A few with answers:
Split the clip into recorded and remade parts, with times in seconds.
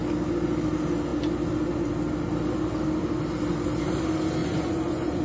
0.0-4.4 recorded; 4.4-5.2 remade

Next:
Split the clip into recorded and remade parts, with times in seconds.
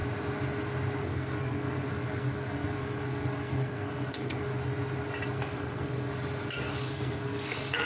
0.0-1.0 recorded; 1.0-4.5 remade; 4.5-5.3 recorded; 5.3-6.1 remade; 6.1-6.8 recorded; 6.8-7.9 remade